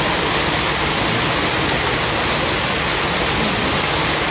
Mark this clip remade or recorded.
recorded